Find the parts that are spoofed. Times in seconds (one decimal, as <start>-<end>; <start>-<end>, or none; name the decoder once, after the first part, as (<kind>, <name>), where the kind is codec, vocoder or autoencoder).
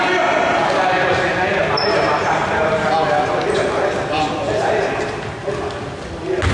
1.5-2.9 (vocoder, BigVGAN v2); 4.6-5.4